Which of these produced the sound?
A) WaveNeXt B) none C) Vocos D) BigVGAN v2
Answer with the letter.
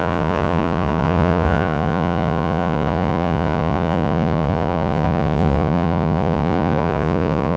C